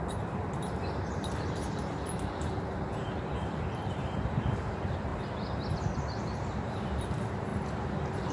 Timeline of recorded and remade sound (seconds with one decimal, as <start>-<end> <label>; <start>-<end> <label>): 0.0-5.1 remade; 5.1-5.7 recorded; 5.7-7.5 remade; 7.5-8.3 recorded